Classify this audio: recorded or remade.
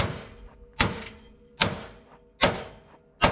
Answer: recorded